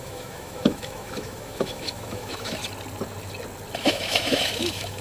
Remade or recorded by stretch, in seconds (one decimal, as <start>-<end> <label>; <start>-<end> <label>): 0.0-2.6 remade; 2.6-3.8 recorded; 3.8-5.0 remade